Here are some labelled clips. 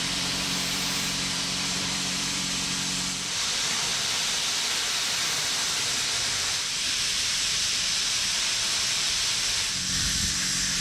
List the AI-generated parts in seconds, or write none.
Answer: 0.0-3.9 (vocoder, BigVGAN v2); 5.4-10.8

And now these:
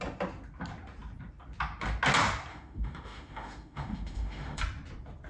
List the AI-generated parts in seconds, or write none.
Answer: 2.5-4.6 (autoencoder, DAC-VAE)

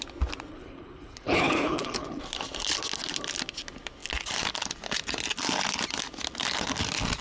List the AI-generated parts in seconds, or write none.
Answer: 0.5-2.2 (codec, HILCodec)

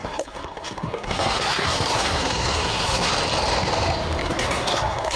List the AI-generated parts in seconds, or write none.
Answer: 0.0-3.1 (codec, SNAC); 4.2-5.2

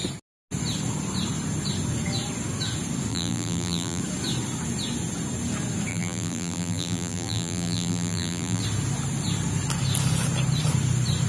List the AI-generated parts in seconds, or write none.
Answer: 3.1-4.0 (vocoder, BigVGAN v2); 5.9-8.6

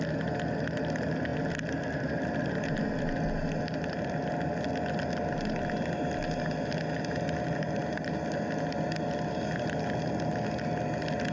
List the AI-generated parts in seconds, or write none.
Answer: none

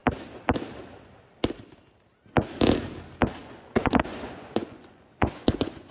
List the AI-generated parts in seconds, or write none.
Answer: 3.4-5.9 (vocoder, Vocos)

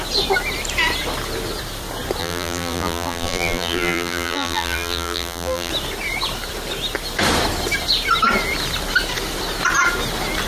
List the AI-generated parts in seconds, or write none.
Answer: 2.2-5.7 (vocoder, BigVGAN v2)